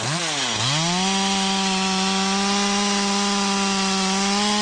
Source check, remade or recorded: recorded